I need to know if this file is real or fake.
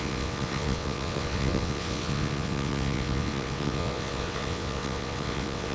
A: fake